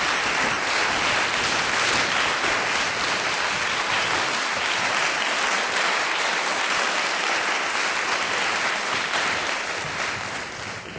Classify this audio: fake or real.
real